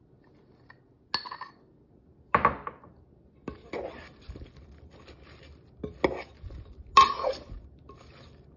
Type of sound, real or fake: real